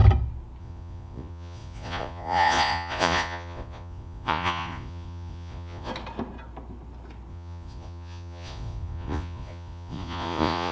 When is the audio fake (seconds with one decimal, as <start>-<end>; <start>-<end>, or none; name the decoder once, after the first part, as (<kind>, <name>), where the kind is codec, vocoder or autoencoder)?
0.6-5.9 (vocoder, Vocos); 7.3-10.7